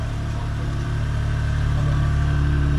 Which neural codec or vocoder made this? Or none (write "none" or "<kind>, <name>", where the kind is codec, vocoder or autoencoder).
vocoder, BigVGAN v2